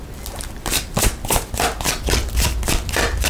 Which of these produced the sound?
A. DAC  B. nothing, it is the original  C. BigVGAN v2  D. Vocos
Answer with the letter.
C